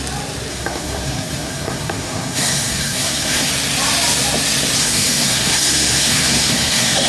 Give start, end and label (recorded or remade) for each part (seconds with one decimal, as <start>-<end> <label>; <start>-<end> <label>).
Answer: 0.0-0.5 recorded; 0.5-3.5 remade; 3.5-4.8 recorded; 4.8-7.1 remade